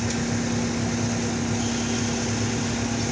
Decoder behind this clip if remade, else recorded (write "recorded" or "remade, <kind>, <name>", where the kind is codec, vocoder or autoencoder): recorded